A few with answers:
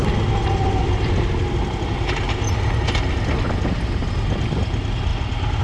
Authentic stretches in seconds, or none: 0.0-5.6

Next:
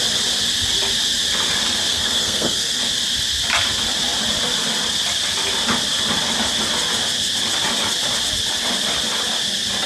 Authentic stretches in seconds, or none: 0.0-1.9; 2.8-9.9